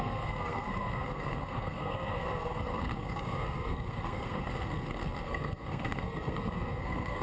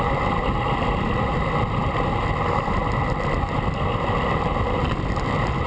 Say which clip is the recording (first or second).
second